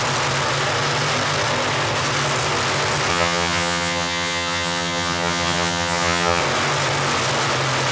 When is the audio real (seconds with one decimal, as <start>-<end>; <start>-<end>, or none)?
0.0-3.1; 6.4-7.9